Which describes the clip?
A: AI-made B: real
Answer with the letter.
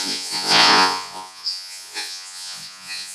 A